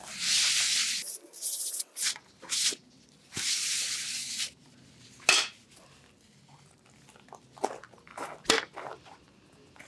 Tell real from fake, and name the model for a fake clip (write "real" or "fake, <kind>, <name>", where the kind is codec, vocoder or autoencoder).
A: real